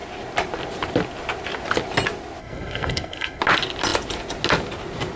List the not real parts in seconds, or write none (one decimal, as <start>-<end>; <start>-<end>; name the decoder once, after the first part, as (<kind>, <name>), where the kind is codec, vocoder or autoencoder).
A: 2.4-3.4 (codec, SNAC)